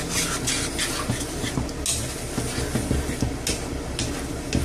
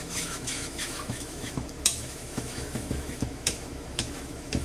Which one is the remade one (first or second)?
second